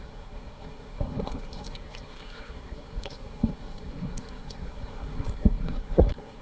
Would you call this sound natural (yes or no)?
no